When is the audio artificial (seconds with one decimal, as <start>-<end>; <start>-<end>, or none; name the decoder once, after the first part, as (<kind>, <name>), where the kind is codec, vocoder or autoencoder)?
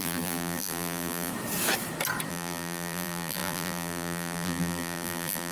0.0-1.3 (vocoder, BigVGAN v2); 2.3-5.5